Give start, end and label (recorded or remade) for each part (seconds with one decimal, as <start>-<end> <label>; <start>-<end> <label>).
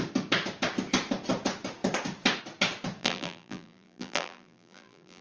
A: 0.0-3.0 recorded; 3.0-5.2 remade